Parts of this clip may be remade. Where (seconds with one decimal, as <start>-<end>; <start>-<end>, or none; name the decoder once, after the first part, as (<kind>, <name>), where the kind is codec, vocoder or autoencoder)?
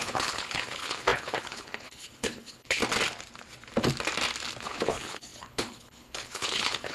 0.0-2.8 (codec, HILCodec); 4.6-6.9